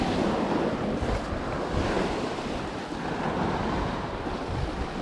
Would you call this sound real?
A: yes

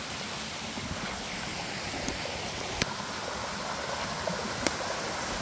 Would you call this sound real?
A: yes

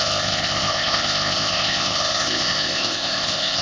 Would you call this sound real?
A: no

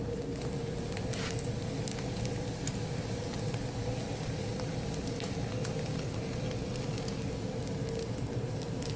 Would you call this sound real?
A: yes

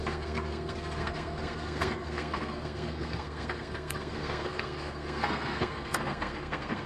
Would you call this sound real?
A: no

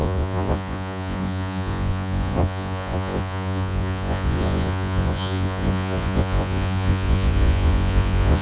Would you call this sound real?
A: no